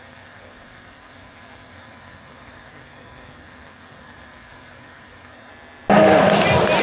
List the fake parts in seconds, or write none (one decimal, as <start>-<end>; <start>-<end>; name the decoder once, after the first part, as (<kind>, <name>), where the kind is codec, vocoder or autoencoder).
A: 0.0-5.5 (codec, SNAC)